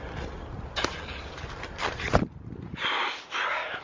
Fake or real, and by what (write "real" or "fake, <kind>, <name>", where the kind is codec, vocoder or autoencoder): real